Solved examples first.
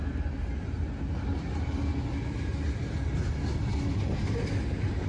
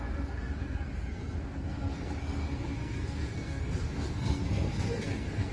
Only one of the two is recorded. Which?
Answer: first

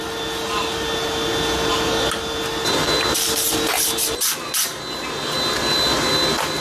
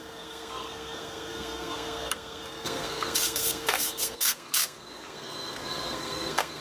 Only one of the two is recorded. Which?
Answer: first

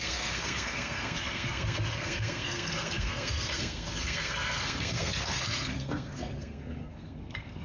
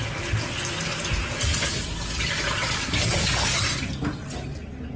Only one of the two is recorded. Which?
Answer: second